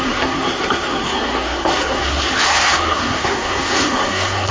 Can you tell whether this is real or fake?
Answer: fake